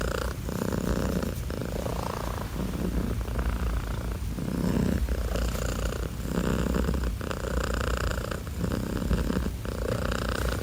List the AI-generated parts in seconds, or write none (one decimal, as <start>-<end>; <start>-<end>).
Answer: none